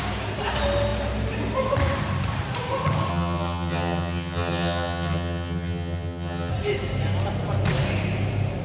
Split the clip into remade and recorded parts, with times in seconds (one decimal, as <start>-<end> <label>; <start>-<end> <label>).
0.0-3.1 recorded; 3.1-6.5 remade; 6.5-8.6 recorded